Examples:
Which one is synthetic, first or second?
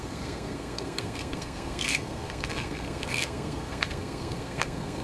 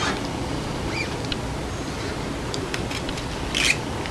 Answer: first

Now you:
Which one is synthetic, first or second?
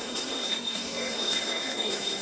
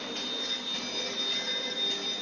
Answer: first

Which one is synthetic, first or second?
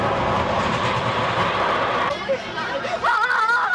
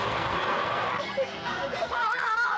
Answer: second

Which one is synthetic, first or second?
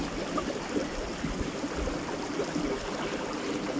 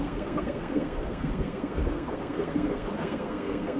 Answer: second